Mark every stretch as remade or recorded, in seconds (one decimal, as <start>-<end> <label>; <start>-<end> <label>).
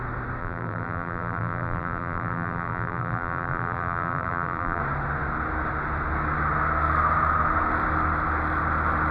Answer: 0.0-0.4 recorded; 0.4-4.8 remade; 4.8-9.1 recorded